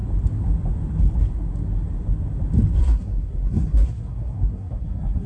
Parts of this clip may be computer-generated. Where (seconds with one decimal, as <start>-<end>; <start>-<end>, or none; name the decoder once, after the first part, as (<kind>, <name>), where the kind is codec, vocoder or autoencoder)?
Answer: 2.8-5.3 (codec, SNAC)